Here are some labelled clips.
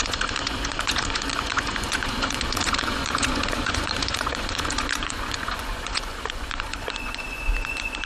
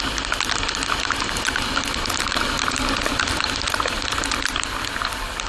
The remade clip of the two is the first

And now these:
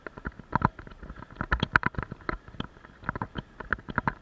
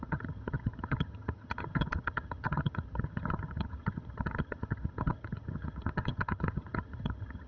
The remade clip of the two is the second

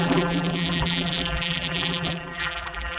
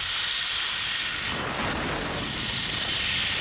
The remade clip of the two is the first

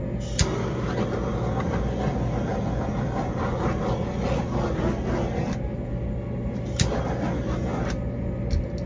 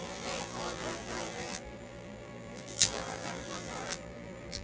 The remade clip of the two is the second